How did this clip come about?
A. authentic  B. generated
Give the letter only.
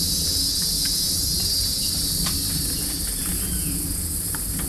A